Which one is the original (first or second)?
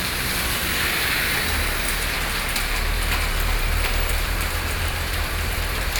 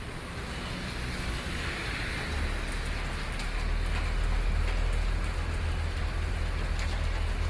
second